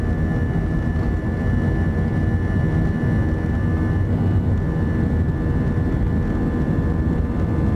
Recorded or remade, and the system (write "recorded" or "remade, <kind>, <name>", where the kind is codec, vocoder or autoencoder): recorded